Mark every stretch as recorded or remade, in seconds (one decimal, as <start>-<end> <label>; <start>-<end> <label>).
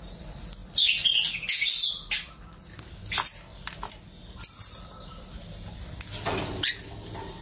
0.0-7.4 recorded